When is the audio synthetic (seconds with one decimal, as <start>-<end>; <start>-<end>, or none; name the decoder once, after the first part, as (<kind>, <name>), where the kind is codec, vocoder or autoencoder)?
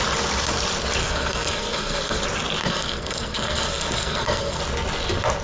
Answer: 1.0-2.2 (codec, SNAC); 2.6-4.6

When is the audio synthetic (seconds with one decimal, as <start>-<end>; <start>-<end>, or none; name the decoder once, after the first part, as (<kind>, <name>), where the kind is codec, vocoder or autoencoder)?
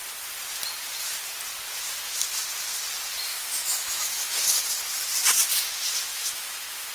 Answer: 3.3-4.4 (autoencoder, DAC-VAE); 6.1-6.9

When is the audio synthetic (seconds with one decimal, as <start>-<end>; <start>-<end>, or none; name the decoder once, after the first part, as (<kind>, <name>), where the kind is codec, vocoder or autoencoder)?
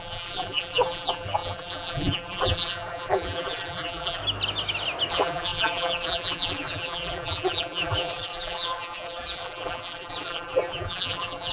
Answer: 0.0-4.2 (vocoder, BigVGAN v2); 5.1-11.5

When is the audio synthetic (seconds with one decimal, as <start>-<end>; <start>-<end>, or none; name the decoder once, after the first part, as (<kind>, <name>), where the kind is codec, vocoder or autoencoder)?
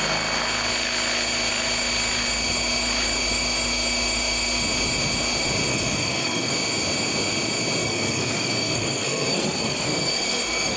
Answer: 5.7-6.5 (codec, SNAC); 7.8-10.8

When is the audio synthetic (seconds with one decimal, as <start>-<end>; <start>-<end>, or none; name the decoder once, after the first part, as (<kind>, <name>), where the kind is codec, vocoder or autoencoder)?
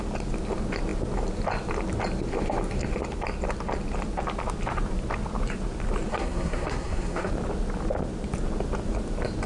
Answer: 6.1-7.3 (codec, SNAC)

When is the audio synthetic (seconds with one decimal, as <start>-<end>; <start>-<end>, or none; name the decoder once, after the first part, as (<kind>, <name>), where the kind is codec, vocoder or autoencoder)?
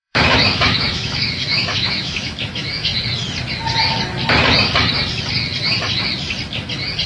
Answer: 0.0-2.9 (autoencoder, DAC-VAE)